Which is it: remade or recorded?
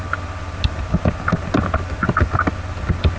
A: recorded